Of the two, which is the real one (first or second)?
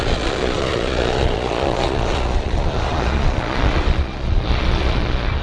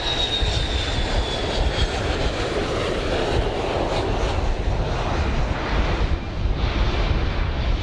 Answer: second